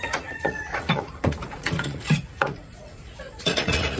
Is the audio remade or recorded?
remade